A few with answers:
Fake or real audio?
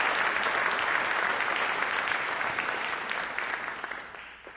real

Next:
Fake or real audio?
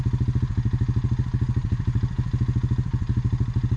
real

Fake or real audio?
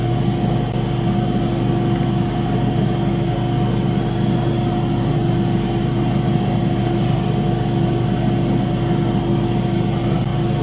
real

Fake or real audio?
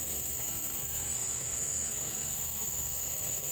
fake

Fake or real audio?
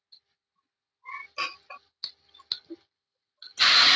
real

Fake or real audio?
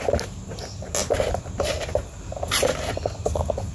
real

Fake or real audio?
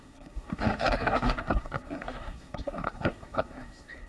fake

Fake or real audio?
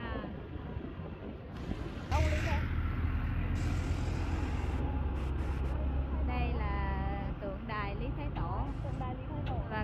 real